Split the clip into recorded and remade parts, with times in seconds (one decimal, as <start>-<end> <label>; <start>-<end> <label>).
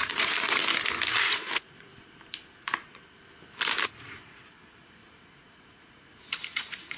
0.0-0.6 remade; 0.6-1.3 recorded; 1.3-1.9 remade; 1.9-4.0 recorded; 4.0-7.0 remade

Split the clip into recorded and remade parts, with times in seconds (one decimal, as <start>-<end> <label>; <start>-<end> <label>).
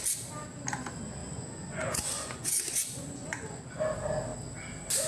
0.0-1.2 recorded; 1.2-3.8 remade; 3.8-5.1 recorded